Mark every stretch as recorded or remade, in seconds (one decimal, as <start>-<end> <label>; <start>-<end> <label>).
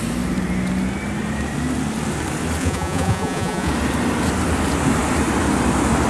0.0-2.6 recorded; 2.6-3.7 remade; 3.7-6.1 recorded